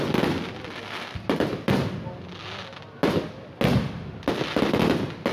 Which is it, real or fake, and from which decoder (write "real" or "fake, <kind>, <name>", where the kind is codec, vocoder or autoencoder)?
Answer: real